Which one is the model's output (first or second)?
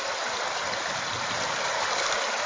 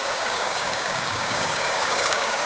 second